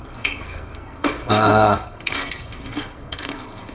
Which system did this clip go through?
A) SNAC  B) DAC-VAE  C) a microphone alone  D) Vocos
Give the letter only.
A